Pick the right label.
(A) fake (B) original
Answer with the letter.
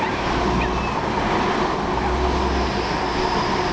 B